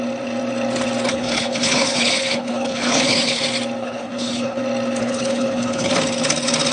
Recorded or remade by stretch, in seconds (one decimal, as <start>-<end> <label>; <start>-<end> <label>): 0.0-1.1 recorded; 1.1-3.4 remade; 3.4-3.8 recorded; 3.8-4.6 remade; 4.6-5.0 recorded; 5.0-5.9 remade; 5.9-6.7 recorded